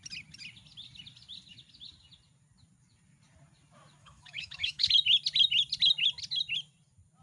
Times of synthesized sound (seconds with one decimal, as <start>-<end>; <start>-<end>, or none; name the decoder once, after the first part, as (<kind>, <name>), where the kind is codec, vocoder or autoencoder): 4.0-4.9 (autoencoder, DAC-VAE)